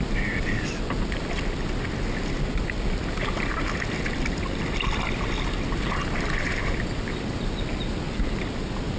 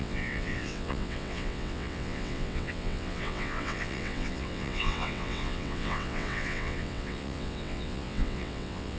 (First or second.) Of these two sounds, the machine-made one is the second